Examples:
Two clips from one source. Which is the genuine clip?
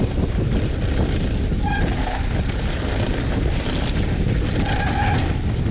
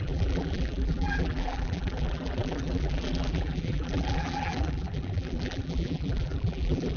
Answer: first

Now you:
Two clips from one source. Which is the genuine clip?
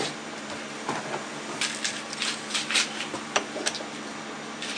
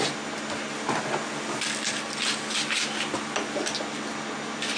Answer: second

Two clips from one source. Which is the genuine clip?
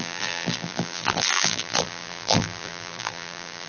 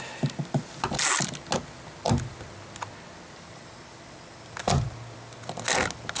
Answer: second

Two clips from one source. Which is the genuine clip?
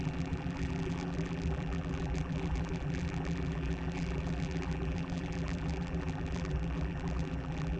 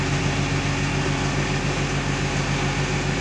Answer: second